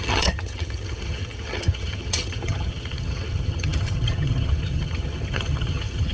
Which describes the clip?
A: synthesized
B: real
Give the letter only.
A